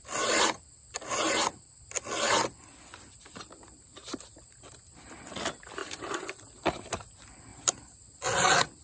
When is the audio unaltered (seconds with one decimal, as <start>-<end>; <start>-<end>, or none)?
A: 0.0-3.2; 5.1-5.8; 6.9-7.5; 8.3-8.8